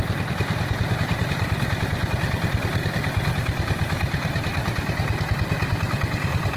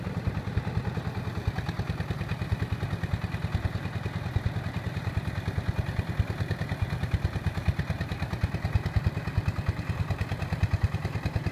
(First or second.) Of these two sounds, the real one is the second